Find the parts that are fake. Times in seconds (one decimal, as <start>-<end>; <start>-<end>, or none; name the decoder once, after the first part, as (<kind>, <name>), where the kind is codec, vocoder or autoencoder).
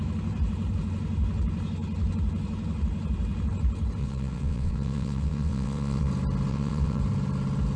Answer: 4.0-6.1 (vocoder, WaveNeXt); 6.5-7.0